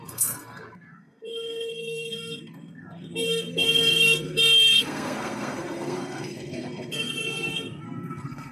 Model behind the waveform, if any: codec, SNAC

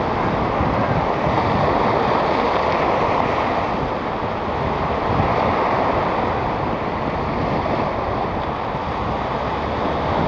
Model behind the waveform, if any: none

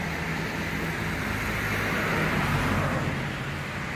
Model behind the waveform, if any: none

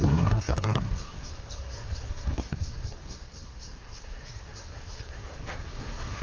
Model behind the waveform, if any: codec, SNAC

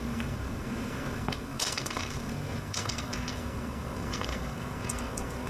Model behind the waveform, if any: codec, SNAC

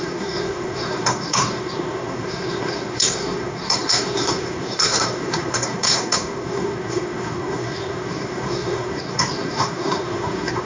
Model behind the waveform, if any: codec, SNAC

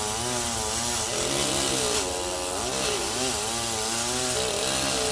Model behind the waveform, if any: none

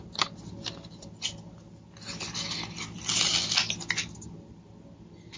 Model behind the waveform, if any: none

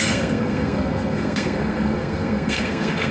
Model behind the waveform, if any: codec, SNAC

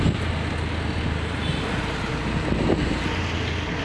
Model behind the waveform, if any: none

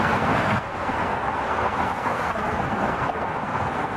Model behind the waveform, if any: codec, SNAC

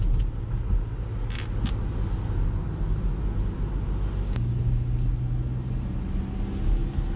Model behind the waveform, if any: none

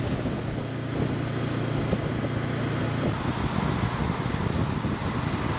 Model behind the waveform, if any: none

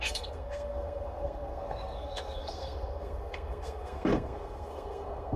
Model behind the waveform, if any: codec, SNAC